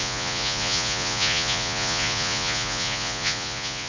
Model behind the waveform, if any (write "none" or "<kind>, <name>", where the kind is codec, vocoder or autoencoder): vocoder, Vocos